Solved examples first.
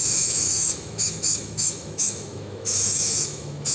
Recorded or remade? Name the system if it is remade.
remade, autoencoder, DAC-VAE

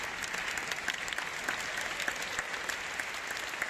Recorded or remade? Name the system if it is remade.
recorded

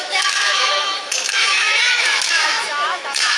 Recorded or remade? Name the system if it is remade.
remade, autoencoder, DAC-VAE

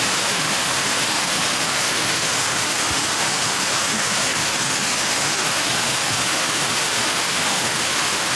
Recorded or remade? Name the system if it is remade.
remade, autoencoder, DAC-VAE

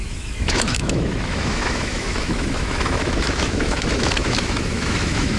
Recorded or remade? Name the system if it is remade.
remade, autoencoder, DAC-VAE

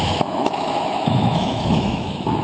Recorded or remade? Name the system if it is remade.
remade, autoencoder, DAC-VAE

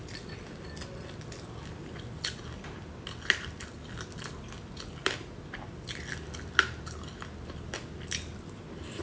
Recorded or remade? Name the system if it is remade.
recorded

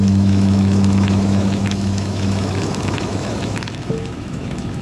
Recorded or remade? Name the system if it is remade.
remade, autoencoder, DAC-VAE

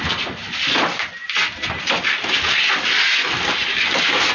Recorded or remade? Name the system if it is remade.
recorded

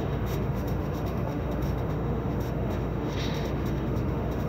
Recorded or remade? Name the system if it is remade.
remade, autoencoder, DAC-VAE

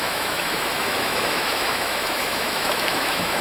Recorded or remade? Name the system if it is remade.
remade, autoencoder, DAC-VAE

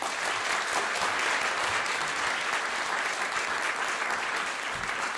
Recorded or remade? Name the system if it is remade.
recorded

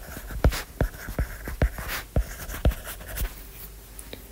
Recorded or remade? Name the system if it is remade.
recorded